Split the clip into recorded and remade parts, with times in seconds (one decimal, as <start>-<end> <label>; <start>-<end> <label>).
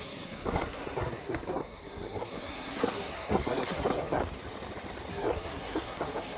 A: 0.0-4.2 remade; 4.2-5.1 recorded; 5.1-6.4 remade